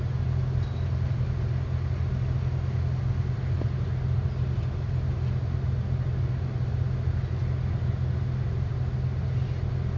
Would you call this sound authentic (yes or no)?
yes